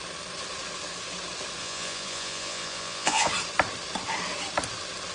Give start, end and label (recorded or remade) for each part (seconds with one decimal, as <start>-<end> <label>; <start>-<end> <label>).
0.0-1.6 recorded; 1.6-3.3 remade; 3.3-5.1 recorded